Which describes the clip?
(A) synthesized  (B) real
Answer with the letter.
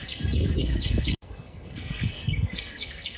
A